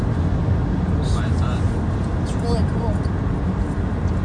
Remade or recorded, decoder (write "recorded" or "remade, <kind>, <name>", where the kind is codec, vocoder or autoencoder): recorded